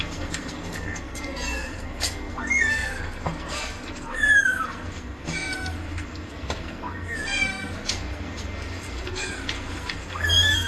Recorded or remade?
remade